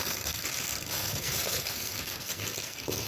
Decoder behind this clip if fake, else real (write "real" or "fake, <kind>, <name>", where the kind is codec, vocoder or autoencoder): fake, codec, SNAC